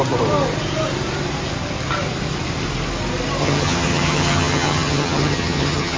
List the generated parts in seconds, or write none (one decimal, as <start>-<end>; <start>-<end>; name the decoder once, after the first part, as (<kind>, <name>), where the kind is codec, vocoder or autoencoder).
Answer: 3.4-6.0 (vocoder, HiFi-GAN)